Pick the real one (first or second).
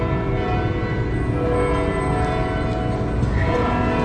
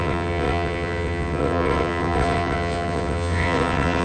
first